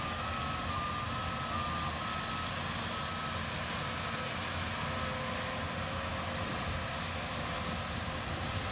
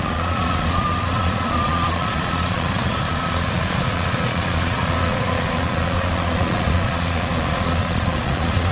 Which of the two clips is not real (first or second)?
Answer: second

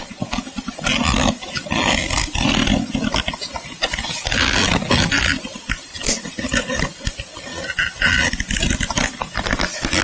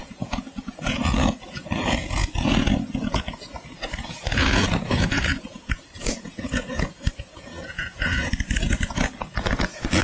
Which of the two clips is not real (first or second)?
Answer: second